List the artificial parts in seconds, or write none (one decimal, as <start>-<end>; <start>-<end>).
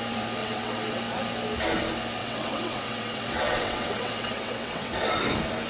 0.4-1.0; 2.2-5.2